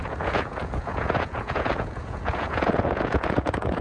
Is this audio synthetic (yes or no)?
yes